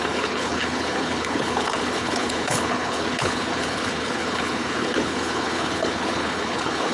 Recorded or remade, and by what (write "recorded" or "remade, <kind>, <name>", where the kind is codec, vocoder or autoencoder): remade, codec, HILCodec